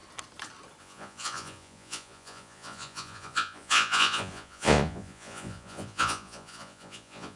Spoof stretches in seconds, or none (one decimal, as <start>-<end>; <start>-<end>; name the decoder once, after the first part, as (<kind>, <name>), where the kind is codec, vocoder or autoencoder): 0.8-7.4 (vocoder, Vocos)